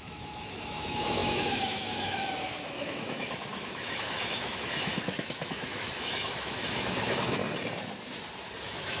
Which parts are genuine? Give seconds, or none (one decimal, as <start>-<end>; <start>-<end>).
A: 7.4-8.6